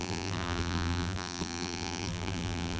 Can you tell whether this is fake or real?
fake